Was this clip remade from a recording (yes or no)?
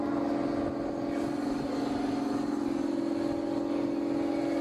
no